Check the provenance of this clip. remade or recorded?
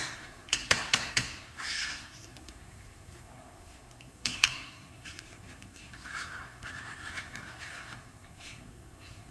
remade